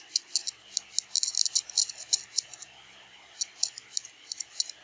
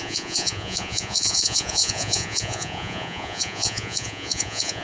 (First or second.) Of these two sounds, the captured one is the first